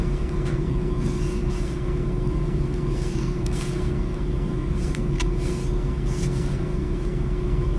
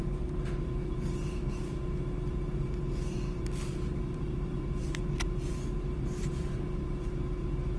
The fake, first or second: first